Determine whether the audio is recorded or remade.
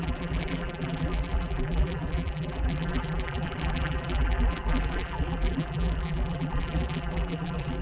remade